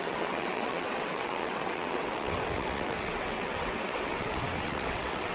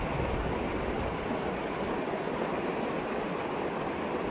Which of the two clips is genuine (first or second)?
second